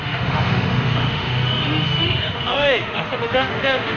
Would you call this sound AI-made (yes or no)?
yes